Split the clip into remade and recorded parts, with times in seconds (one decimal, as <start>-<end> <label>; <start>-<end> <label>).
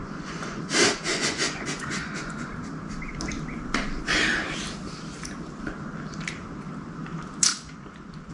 0.0-0.6 remade; 0.6-1.1 recorded; 1.1-2.5 remade; 2.5-7.5 recorded; 7.5-8.3 remade